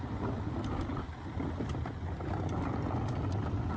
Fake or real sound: real